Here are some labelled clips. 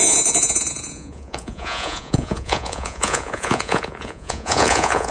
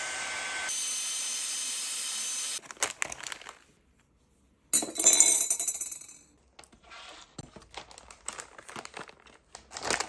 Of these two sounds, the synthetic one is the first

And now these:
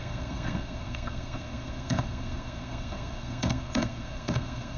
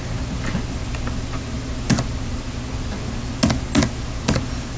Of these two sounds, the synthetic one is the first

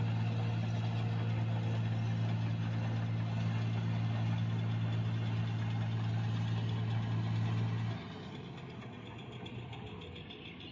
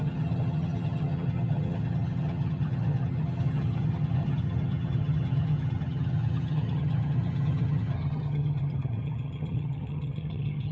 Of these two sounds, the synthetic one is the second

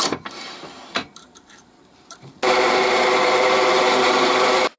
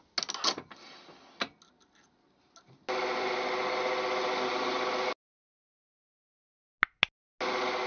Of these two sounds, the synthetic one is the first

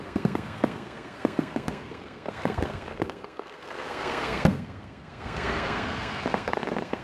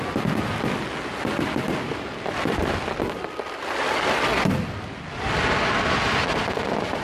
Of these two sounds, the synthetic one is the first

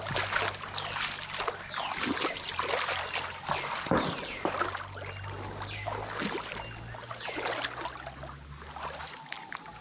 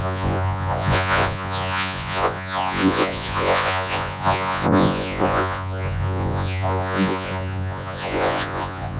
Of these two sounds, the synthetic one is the second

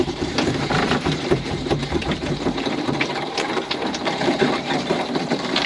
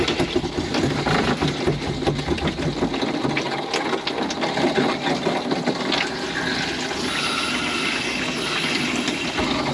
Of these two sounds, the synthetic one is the first